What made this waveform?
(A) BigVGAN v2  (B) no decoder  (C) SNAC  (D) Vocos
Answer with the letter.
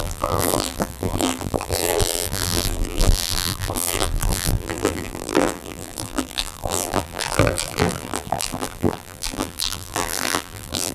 A